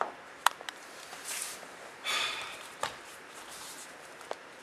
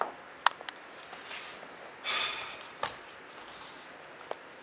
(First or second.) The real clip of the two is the second